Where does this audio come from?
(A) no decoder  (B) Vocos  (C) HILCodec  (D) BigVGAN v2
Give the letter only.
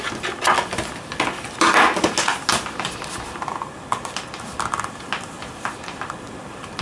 A